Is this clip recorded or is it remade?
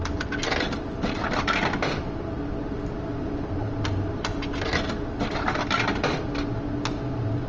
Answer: recorded